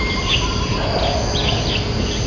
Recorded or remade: recorded